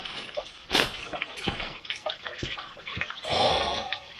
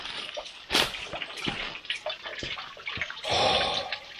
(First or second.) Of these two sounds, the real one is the second